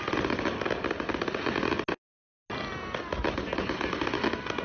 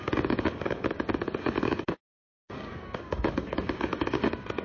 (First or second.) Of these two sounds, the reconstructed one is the second